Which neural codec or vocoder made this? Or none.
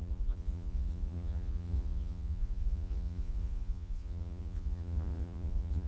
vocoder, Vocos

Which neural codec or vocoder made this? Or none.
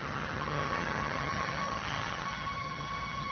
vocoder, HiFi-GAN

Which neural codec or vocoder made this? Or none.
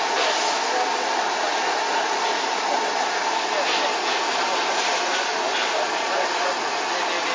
none